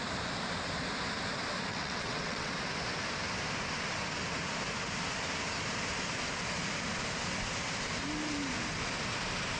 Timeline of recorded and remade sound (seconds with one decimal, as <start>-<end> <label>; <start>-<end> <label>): 0.0-1.7 recorded; 1.7-2.5 remade; 2.5-9.6 recorded